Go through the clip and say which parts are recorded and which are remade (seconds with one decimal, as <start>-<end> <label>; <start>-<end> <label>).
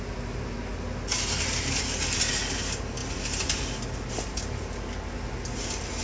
0.0-6.0 recorded